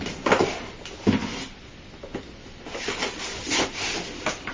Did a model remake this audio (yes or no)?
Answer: no